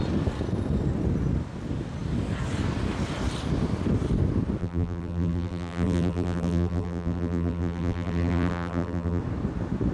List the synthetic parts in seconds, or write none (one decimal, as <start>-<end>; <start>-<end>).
4.6-9.2